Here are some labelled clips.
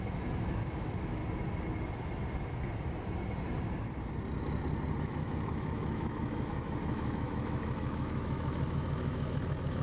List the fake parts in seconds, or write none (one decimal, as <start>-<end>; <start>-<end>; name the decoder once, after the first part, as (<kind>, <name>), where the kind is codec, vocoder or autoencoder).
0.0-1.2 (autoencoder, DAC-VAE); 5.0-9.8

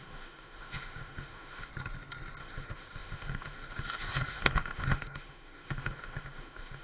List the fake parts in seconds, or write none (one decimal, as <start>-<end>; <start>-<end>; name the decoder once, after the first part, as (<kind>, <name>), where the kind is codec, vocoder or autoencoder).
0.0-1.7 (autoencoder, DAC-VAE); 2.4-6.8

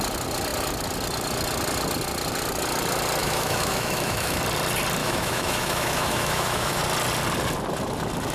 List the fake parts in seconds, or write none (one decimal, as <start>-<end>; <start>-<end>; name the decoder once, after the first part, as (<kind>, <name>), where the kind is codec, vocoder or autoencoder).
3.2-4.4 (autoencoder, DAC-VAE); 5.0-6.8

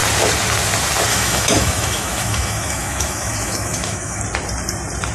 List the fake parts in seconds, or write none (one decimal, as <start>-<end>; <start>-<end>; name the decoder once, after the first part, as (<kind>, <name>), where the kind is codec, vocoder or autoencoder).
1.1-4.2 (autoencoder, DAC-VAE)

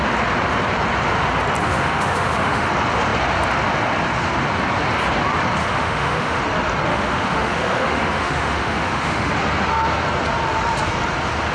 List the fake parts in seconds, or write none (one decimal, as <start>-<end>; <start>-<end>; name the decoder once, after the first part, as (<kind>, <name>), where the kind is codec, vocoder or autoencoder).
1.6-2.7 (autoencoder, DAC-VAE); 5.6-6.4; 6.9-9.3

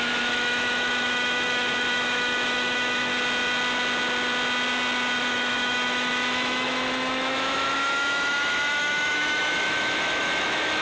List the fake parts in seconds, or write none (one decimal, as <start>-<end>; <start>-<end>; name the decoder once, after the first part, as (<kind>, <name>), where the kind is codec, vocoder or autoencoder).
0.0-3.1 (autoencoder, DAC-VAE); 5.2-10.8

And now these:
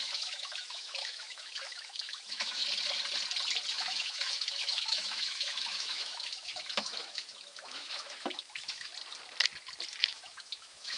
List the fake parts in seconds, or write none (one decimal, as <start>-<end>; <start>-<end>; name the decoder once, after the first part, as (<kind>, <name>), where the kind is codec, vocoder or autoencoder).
0.0-2.6 (autoencoder, DAC-VAE); 3.7-8.9; 10.0-11.0

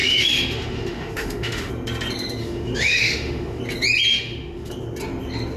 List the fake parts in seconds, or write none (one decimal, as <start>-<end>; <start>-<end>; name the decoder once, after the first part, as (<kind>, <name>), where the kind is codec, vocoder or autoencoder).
0.0-1.7 (autoencoder, DAC-VAE); 2.4-3.6; 4.1-4.7